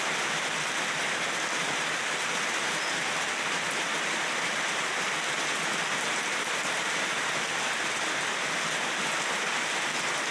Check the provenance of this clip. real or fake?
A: real